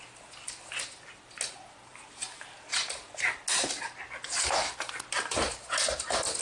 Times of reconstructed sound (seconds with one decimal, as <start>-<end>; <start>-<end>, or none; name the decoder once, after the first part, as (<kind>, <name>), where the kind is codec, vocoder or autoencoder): none